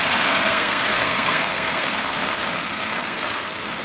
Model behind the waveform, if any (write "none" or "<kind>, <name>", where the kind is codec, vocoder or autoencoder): codec, SNAC